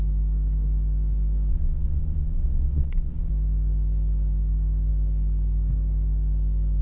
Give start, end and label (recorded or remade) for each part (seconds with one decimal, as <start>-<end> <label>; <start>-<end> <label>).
0.0-1.5 recorded; 1.5-3.3 remade; 3.3-6.8 recorded

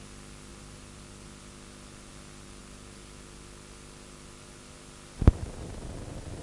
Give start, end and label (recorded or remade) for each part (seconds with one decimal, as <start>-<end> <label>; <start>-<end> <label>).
0.0-0.5 recorded; 0.5-2.1 remade; 2.1-6.4 recorded

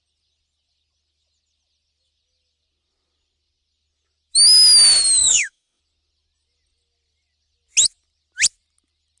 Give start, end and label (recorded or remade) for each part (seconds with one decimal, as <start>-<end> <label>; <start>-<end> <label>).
0.0-5.2 recorded; 5.2-5.8 remade; 5.8-9.2 recorded

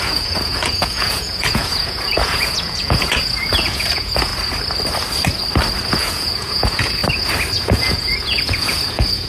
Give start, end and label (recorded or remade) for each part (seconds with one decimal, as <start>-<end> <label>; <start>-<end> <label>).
0.0-4.3 remade; 4.3-5.9 recorded; 5.9-7.0 remade; 7.0-7.6 recorded; 7.6-9.3 remade

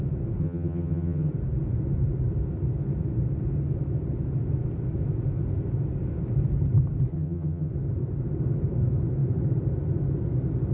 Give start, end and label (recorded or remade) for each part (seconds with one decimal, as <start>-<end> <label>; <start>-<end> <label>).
0.0-0.4 recorded; 0.4-1.3 remade; 1.3-7.1 recorded; 7.1-7.7 remade; 7.7-10.7 recorded

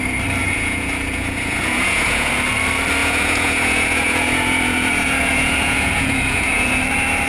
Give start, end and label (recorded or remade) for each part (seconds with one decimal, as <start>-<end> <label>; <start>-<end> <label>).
0.0-0.4 recorded; 0.4-2.3 remade; 2.3-3.0 recorded; 3.0-6.8 remade; 6.8-7.3 recorded